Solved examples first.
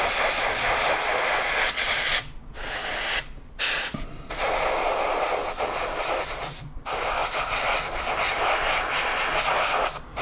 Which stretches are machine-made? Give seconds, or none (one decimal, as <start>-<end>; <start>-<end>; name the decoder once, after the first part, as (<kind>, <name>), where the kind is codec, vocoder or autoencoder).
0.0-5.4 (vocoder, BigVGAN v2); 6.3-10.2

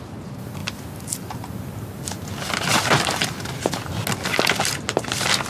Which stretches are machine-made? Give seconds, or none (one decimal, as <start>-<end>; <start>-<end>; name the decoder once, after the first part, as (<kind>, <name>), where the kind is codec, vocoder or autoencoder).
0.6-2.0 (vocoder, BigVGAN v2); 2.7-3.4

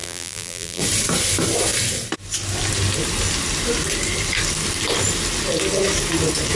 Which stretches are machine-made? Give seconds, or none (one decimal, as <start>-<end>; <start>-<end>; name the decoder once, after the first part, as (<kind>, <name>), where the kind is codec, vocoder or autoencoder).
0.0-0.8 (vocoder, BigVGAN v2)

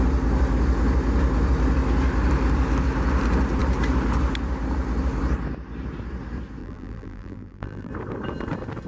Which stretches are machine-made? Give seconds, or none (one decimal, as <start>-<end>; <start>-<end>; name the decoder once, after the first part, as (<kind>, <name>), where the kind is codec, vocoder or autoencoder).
6.6-7.9 (vocoder, BigVGAN v2)